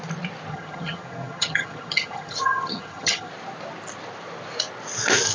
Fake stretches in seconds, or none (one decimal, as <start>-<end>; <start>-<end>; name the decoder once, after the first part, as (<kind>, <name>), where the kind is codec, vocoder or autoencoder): 0.5-3.3 (vocoder, HiFi-GAN)